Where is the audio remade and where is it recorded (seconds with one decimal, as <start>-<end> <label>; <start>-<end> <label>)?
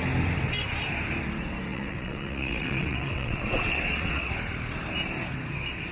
0.0-1.7 recorded; 1.7-4.3 remade; 4.3-5.9 recorded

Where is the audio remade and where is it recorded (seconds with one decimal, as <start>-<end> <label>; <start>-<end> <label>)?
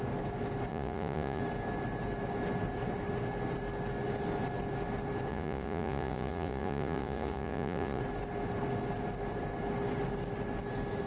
0.0-0.7 recorded; 0.7-1.4 remade; 1.4-5.3 recorded; 5.3-8.0 remade; 8.0-11.1 recorded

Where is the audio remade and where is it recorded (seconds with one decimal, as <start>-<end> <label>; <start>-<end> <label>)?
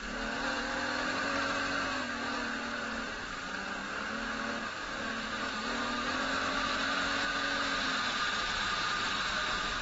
0.0-9.8 recorded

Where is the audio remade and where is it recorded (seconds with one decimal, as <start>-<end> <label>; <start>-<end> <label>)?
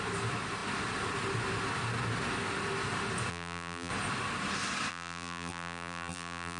0.0-3.3 recorded; 3.3-3.9 remade; 3.9-4.9 recorded; 4.9-6.6 remade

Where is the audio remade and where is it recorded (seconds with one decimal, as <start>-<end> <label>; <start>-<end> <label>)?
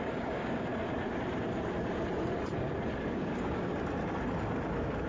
0.0-0.7 remade; 0.7-3.1 recorded; 3.1-3.7 remade; 3.7-5.1 recorded